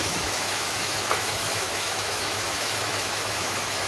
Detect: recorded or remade remade